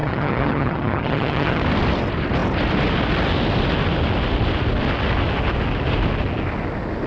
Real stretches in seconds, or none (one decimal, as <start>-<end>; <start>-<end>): 1.6-7.1